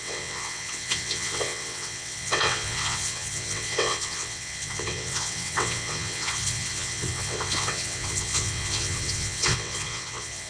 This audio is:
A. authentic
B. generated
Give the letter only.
B